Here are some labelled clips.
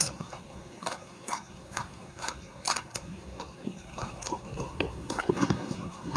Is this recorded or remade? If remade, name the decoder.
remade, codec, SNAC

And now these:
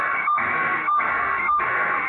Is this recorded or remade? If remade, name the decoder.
remade, codec, SNAC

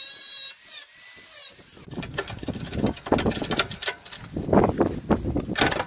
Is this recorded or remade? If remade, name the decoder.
recorded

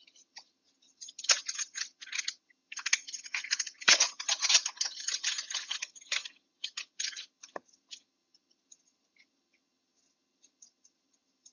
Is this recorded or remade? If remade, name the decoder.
remade, vocoder, HiFi-GAN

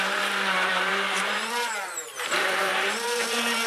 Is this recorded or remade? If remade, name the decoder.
remade, vocoder, BigVGAN v2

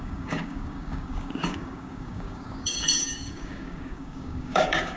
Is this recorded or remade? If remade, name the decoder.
remade, codec, DAC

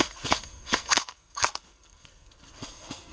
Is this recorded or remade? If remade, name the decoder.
remade, codec, SNAC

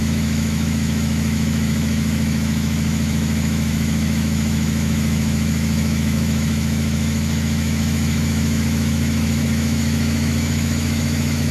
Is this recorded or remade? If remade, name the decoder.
remade, autoencoder, DAC-VAE